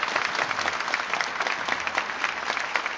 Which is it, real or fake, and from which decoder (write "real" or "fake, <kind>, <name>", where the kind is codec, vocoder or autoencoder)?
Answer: real